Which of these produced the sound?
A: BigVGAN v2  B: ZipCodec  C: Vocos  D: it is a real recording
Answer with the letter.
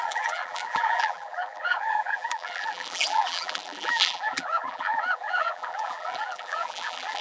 A